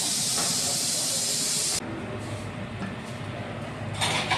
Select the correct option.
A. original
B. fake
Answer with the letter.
A